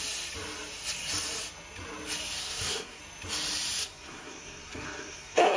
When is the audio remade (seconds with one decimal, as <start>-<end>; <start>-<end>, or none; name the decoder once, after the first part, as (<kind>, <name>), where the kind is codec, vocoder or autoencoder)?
2.4-3.0 (codec, SNAC); 3.8-5.6